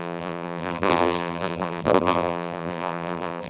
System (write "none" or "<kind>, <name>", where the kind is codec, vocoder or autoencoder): vocoder, BigVGAN v2